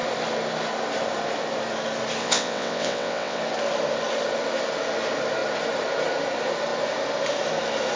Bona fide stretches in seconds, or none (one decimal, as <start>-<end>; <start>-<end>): 0.0-2.2; 3.4-8.0